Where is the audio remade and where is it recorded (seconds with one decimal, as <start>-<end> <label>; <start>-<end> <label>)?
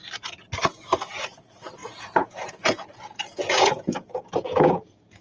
0.0-1.8 recorded; 1.8-5.2 remade